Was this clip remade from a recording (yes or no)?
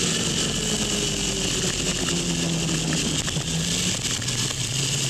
no